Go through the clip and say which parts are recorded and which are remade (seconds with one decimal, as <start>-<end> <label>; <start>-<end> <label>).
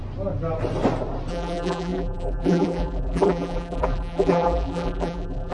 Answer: 0.0-1.3 recorded; 1.3-5.5 remade